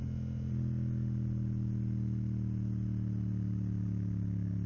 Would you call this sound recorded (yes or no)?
yes